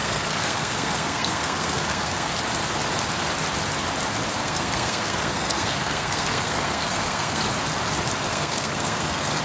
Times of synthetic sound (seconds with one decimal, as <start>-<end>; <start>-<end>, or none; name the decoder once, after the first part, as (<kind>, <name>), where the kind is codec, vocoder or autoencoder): 0.0-2.3 (codec, SNAC); 4.4-7.4; 8.3-9.4